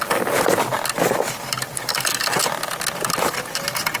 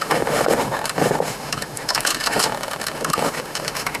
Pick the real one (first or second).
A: first